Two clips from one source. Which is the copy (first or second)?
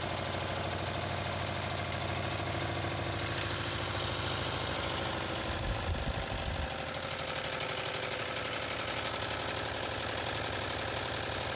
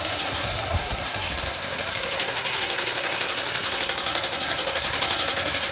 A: second